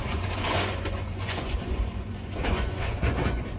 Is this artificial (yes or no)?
yes